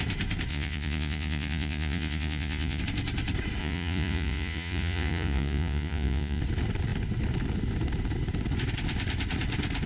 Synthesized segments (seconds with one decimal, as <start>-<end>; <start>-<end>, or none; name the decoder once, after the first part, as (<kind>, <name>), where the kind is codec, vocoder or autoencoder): 0.5-2.8 (vocoder, Vocos); 3.6-6.4